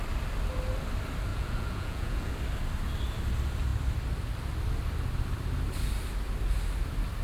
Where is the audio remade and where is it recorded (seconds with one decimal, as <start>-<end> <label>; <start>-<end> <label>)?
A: 0.0-1.3 recorded; 1.3-2.3 remade; 2.3-7.2 recorded